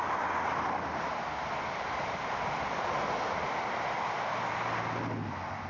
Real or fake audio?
real